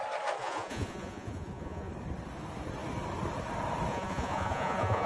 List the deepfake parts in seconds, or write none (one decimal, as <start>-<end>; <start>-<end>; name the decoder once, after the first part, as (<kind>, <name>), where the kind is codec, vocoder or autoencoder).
0.4-1.9 (vocoder, Vocos); 3.9-5.1